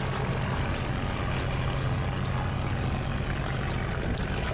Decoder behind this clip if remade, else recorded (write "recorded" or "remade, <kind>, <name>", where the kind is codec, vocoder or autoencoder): recorded